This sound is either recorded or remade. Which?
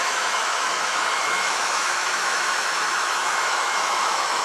remade